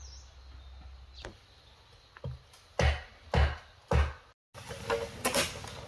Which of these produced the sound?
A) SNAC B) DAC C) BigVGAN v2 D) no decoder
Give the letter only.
D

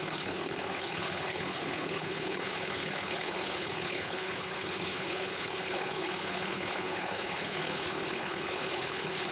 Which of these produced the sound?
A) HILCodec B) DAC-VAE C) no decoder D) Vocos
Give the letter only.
A